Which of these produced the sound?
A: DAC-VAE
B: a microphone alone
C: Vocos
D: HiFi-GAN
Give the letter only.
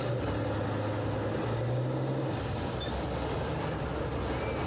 B